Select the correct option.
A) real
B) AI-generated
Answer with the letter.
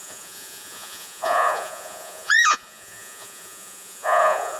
B